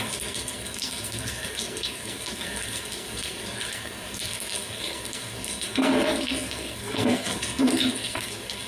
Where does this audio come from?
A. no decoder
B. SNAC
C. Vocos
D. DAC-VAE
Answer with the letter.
B